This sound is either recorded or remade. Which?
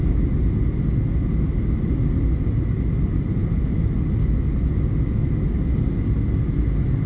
recorded